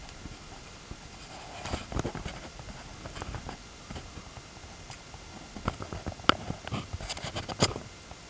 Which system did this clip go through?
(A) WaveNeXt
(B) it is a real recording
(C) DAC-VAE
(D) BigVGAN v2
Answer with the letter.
B